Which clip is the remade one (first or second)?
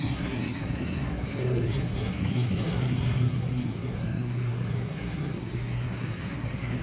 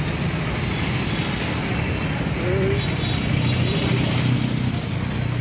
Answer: first